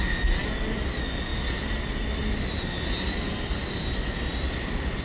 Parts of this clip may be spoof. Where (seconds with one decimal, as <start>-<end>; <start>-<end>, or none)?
none